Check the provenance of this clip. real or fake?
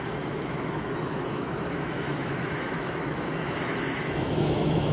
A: fake